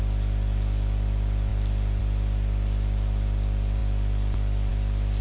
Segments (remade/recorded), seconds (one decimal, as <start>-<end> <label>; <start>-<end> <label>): 0.0-5.2 recorded